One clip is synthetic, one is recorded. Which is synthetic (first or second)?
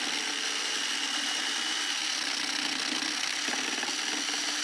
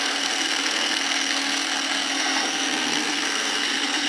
second